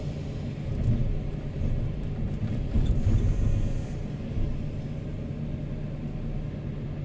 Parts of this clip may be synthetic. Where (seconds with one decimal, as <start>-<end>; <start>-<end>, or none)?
none